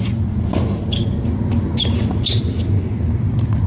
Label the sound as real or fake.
real